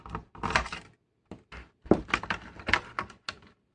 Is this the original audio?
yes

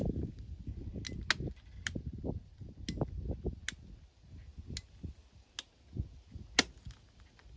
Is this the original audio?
yes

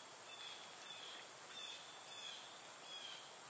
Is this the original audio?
yes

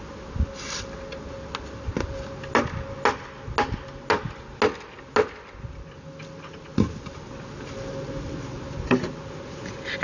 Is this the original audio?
yes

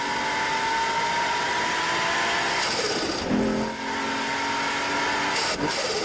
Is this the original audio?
yes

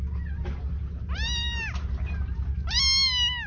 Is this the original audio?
yes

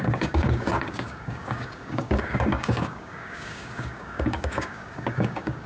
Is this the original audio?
no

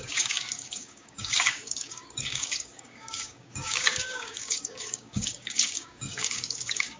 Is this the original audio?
no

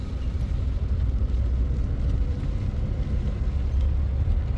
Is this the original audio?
yes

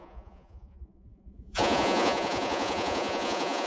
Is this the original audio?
no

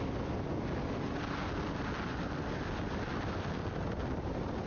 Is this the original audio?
yes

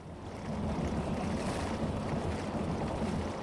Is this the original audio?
yes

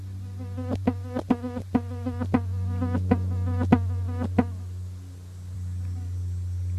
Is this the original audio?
yes